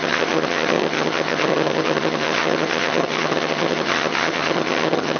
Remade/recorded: remade